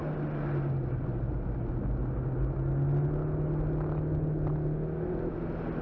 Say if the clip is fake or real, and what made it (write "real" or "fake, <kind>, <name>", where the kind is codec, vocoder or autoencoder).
real